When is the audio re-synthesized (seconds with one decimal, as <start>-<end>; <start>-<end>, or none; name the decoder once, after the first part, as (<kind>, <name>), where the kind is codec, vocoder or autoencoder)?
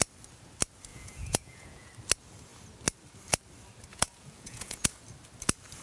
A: 0.9-1.9 (vocoder, Vocos); 3.9-4.9